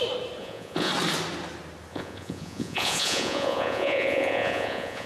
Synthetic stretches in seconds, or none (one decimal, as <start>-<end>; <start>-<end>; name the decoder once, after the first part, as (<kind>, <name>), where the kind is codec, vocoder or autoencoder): 0.4-0.9 (vocoder, Vocos); 1.9-5.1